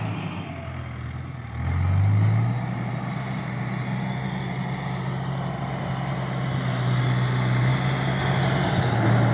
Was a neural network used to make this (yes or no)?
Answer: no